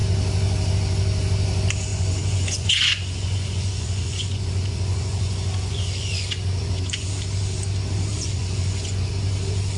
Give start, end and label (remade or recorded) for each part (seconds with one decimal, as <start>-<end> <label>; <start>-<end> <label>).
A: 0.0-1.9 recorded; 1.9-7.1 remade; 7.1-8.1 recorded; 8.1-9.1 remade; 9.1-9.8 recorded